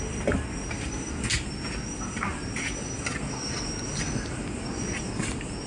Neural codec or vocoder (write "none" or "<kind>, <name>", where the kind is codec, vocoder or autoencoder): none